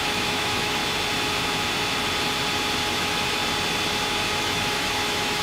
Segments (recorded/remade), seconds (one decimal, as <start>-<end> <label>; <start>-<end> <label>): 0.0-0.8 remade; 0.8-2.9 recorded; 2.9-3.4 remade; 3.4-4.4 recorded; 4.4-5.4 remade